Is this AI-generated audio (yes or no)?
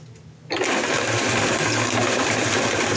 no